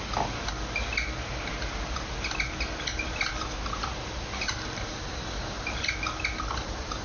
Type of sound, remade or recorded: recorded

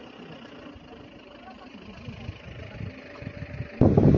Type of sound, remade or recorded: recorded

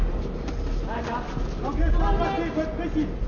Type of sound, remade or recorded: recorded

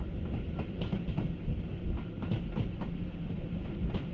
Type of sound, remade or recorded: recorded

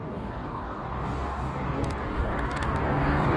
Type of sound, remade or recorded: remade